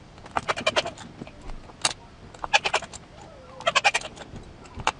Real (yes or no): yes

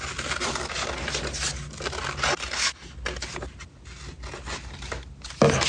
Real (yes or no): yes